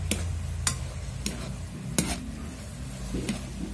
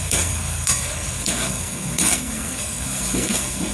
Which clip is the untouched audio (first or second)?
first